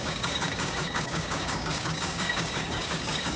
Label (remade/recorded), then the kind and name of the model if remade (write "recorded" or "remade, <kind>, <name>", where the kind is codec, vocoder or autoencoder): remade, codec, DAC